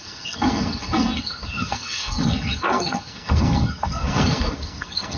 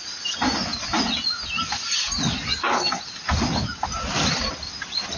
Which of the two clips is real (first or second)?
second